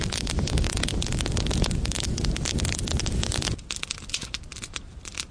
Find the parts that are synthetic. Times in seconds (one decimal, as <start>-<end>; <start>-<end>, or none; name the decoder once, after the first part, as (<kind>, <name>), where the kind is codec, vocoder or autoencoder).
0.0-0.9 (vocoder, BigVGAN v2); 4.1-5.3